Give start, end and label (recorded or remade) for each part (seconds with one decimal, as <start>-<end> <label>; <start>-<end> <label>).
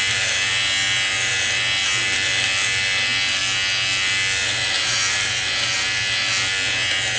0.0-7.2 recorded